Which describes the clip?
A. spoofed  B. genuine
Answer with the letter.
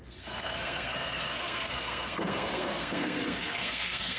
A